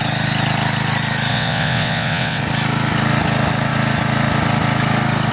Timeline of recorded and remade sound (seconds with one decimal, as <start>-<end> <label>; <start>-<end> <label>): 0.0-1.3 recorded; 1.3-2.4 remade; 2.4-5.3 recorded

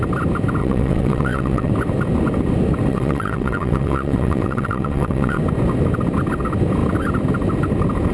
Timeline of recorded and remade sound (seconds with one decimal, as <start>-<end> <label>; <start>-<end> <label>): 0.0-0.6 recorded; 0.6-1.7 remade; 1.7-2.9 recorded; 2.9-5.4 remade; 5.4-8.1 recorded

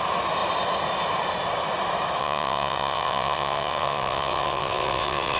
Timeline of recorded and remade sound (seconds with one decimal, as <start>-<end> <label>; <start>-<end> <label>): 0.0-2.2 recorded; 2.2-5.4 remade

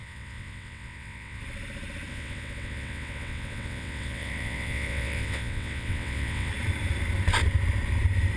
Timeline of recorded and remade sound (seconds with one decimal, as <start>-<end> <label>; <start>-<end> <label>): 0.0-1.4 remade; 1.4-2.1 recorded; 2.1-6.5 remade; 6.5-8.4 recorded